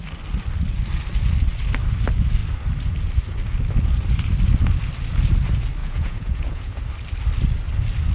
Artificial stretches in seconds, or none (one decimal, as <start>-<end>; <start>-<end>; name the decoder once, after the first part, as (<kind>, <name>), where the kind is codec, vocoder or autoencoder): 5.8-6.8 (vocoder, Vocos)